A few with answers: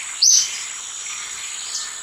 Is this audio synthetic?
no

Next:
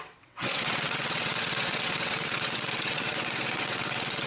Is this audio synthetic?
yes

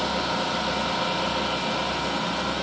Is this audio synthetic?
no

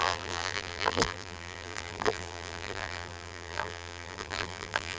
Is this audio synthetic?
yes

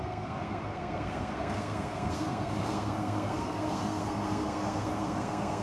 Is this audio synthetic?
yes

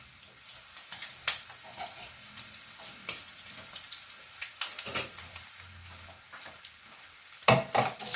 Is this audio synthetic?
no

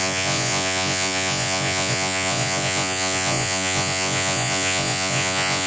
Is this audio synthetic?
yes